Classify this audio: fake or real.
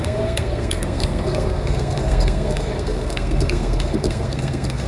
fake